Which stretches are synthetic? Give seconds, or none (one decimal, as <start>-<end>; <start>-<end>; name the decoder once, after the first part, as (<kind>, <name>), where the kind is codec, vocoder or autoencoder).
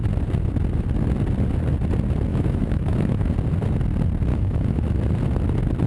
2.3-3.3 (autoencoder, DAC-VAE); 4.3-4.8